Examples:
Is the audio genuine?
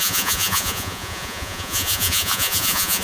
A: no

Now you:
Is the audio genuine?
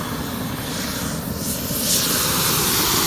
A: yes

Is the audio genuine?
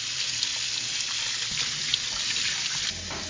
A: yes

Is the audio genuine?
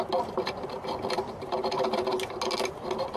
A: yes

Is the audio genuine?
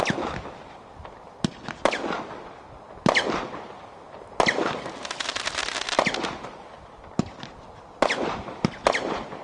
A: yes